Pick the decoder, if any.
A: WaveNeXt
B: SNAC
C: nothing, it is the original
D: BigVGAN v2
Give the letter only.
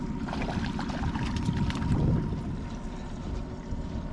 C